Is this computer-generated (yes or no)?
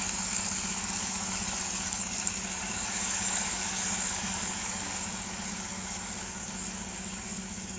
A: yes